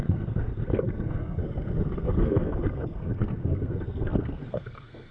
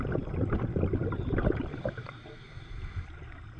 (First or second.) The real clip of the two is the second